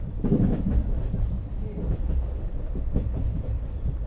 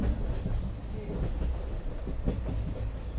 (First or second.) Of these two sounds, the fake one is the first